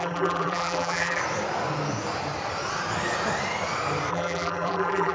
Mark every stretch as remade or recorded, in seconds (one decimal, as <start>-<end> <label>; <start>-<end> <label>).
0.0-1.2 remade; 1.2-4.1 recorded; 4.1-5.1 remade